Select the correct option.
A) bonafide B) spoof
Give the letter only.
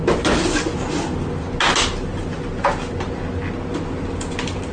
A